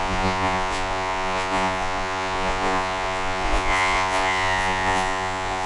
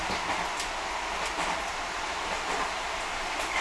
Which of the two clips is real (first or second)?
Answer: second